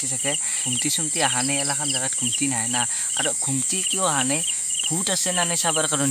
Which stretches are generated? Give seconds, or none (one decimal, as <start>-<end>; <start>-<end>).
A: 2.3-6.1